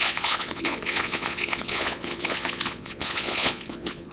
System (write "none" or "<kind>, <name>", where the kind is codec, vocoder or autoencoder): vocoder, Vocos